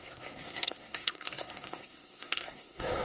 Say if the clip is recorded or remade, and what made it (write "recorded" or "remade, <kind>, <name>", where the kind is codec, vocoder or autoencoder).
remade, codec, SNAC